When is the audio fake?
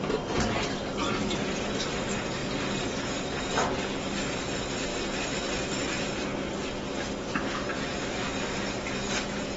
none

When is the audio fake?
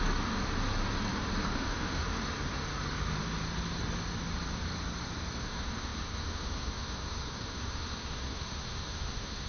1.4-2.0 (autoencoder, DAC-VAE); 5.4-9.5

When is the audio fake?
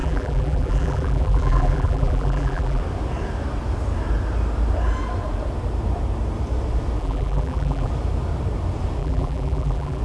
0.0-2.8 (vocoder, BigVGAN v2); 7.0-7.9; 9.0-10.0